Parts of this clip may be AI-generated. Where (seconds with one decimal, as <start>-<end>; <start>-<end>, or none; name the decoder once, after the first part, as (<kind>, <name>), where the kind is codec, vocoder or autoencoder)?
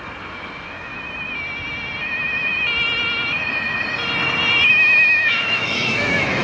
0.0-0.9 (autoencoder, DAC-VAE); 4.7-6.4